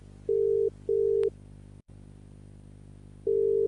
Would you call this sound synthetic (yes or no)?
no